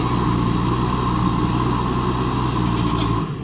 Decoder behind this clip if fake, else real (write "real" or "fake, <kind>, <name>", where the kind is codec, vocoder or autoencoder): real